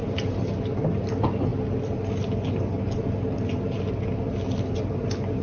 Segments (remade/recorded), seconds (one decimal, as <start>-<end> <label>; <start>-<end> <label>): 0.0-5.4 recorded